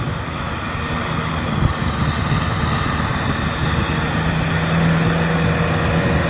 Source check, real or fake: real